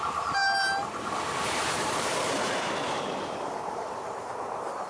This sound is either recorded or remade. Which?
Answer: remade